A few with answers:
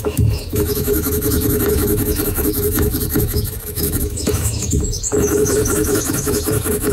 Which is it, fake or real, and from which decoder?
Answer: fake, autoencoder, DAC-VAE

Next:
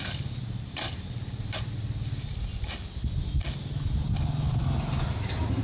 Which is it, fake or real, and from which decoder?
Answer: real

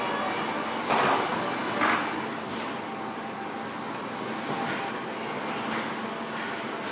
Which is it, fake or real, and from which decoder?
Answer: real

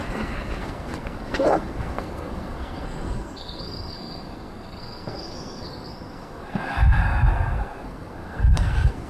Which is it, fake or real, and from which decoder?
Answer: fake, codec, SNAC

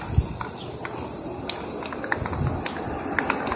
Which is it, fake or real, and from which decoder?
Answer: real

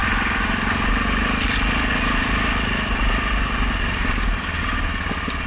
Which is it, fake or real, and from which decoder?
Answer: real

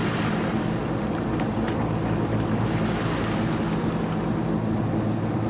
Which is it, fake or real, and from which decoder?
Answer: real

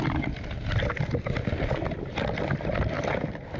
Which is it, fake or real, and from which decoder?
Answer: real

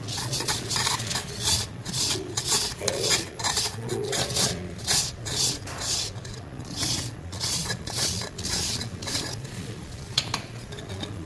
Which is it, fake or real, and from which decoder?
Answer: fake, vocoder, Vocos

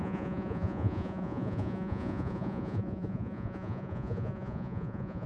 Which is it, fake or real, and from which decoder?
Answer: fake, vocoder, Vocos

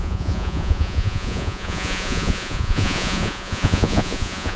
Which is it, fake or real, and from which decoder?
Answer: fake, vocoder, Vocos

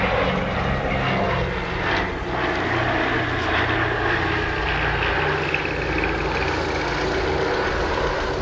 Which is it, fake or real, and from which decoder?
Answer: real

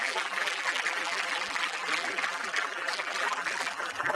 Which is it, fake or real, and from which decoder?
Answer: fake, vocoder, BigVGAN v2